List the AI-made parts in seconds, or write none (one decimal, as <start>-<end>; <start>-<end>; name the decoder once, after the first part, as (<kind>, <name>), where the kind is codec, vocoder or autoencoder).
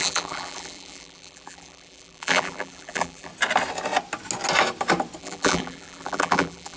0.0-3.3 (vocoder, BigVGAN v2); 5.2-6.8